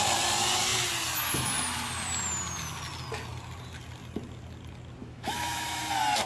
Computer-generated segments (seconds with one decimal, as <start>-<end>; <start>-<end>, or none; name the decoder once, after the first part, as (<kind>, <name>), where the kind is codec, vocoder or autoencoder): 5.0-5.8 (autoencoder, DAC-VAE)